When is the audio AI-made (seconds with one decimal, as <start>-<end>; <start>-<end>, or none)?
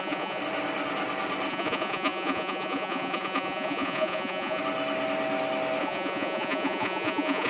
0.0-0.4; 1.5-4.6; 5.8-7.5